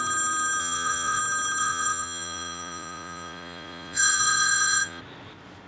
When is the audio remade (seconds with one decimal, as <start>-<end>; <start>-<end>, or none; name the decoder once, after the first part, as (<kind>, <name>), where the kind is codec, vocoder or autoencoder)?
0.6-1.2 (vocoder, Vocos); 1.6-5.0